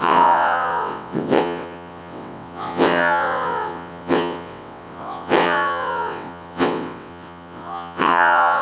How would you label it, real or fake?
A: fake